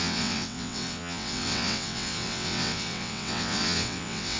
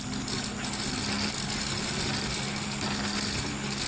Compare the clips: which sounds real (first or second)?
second